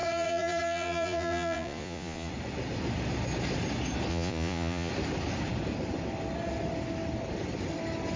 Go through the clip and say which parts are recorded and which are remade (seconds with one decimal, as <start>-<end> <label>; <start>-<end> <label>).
0.0-2.3 remade; 2.3-4.1 recorded; 4.1-4.9 remade; 4.9-8.2 recorded

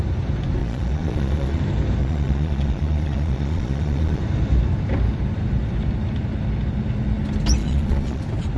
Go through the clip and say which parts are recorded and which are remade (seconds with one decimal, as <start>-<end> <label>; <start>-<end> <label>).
0.0-0.6 recorded; 0.6-1.6 remade; 1.6-2.0 recorded; 2.0-4.2 remade; 4.2-7.6 recorded; 7.6-8.2 remade; 8.2-8.6 recorded

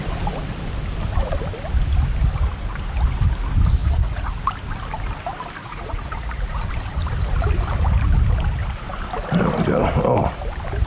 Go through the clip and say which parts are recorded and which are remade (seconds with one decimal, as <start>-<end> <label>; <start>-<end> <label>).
0.0-3.8 recorded; 3.8-4.3 remade; 4.3-5.6 recorded; 5.6-6.7 remade; 6.7-10.9 recorded